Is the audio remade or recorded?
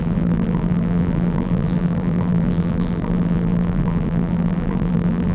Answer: remade